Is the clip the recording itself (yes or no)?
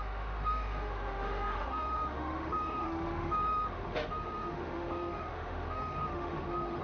no